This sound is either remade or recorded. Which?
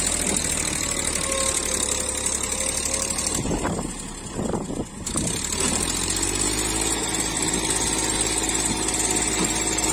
recorded